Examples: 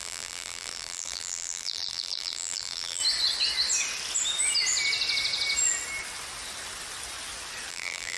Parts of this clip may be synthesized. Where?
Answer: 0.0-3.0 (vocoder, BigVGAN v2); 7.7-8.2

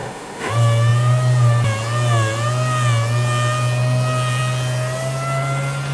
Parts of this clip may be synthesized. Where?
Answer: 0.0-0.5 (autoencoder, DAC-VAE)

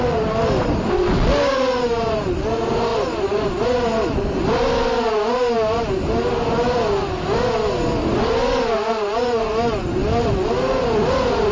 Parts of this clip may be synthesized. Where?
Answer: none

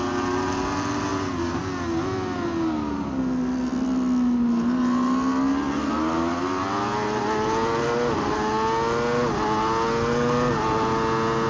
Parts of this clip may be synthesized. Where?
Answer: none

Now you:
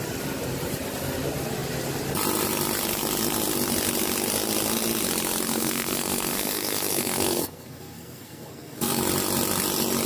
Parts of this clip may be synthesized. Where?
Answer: 5.5-9.0 (codec, SNAC)

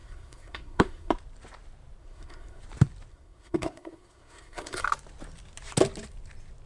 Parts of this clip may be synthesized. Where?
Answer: 0.0-1.1 (codec, SNAC); 2.0-2.6; 3.1-4.8